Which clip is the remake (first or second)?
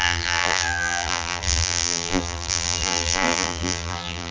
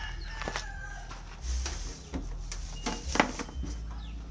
first